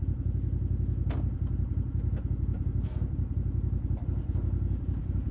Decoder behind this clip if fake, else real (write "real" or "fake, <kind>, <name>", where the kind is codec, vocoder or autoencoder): real